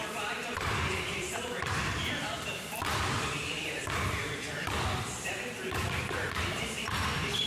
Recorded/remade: remade